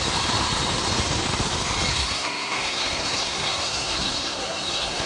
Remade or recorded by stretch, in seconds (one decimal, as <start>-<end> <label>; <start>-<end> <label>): 0.0-1.9 recorded; 1.9-5.1 remade